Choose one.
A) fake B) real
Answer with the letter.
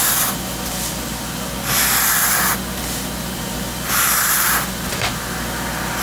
B